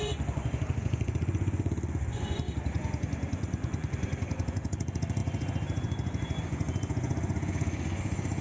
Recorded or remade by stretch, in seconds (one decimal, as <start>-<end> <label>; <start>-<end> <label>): 0.0-8.4 remade